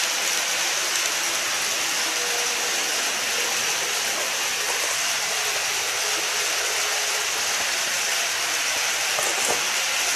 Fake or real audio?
real